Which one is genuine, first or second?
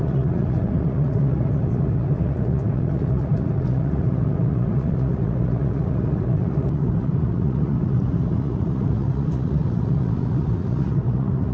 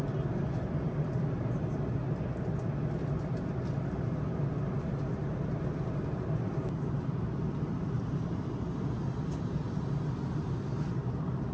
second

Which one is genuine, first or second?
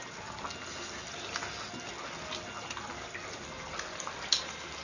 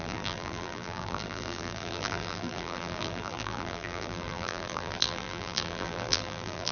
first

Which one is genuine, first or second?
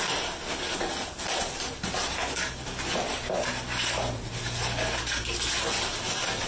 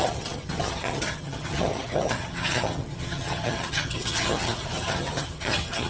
first